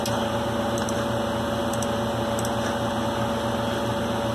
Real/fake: real